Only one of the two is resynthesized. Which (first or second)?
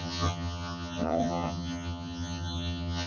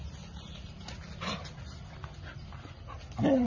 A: first